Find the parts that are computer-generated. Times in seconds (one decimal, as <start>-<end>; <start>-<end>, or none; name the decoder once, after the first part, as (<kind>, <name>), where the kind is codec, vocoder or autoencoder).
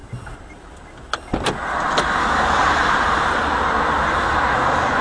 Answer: 0.0-0.7 (vocoder, BigVGAN v2); 2.6-3.4